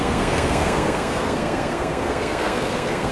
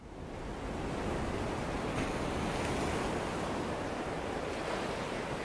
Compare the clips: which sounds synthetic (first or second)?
first